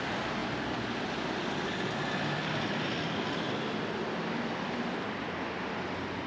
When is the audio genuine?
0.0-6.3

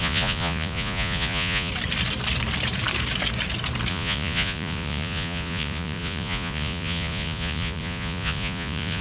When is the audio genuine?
1.7-3.9